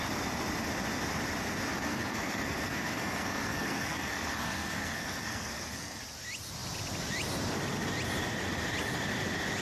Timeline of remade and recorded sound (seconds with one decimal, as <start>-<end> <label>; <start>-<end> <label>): 0.0-1.7 recorded; 1.7-6.0 remade; 6.0-9.6 recorded